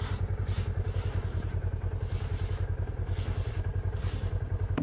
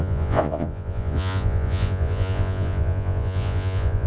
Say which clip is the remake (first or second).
second